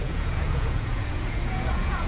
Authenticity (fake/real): fake